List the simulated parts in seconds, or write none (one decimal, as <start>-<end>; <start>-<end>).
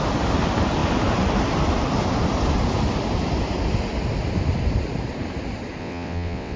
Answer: 5.8-6.6